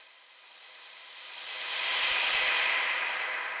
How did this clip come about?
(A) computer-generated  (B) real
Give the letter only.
B